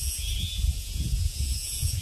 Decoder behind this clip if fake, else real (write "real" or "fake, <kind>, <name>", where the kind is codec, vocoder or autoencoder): fake, vocoder, Vocos